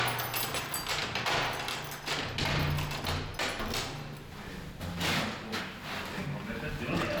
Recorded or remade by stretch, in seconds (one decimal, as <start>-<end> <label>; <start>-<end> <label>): 0.0-7.2 recorded